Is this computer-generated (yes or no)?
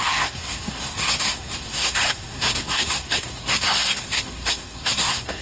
yes